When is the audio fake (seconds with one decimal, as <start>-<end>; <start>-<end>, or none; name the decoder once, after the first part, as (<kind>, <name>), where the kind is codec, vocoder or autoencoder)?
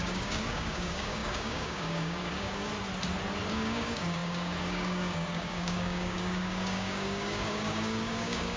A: 0.0-2.7 (codec, DAC); 3.5-8.6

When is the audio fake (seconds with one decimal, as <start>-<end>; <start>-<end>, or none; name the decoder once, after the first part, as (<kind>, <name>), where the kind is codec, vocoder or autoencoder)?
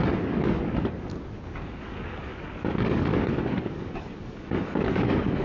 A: 0.0-5.4 (codec, DAC)